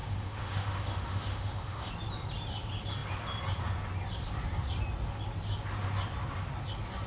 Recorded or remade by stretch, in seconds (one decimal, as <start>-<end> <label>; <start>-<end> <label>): 0.0-1.9 remade; 1.9-7.1 recorded